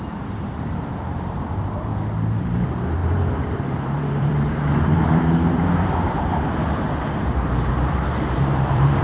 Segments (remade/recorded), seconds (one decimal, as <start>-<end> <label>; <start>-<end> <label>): 0.0-1.9 remade; 1.9-2.4 recorded; 2.4-9.0 remade